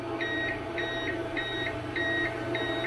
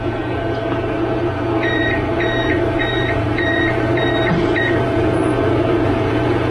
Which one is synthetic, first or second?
second